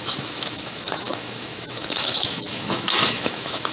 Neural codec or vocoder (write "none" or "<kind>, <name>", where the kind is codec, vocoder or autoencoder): autoencoder, DAC-VAE